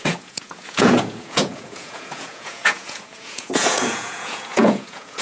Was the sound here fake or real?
fake